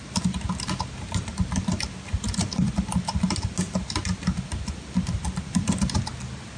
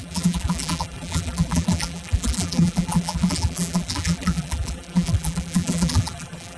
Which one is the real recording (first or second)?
first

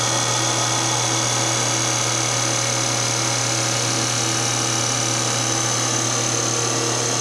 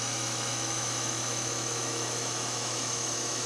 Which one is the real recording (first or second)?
first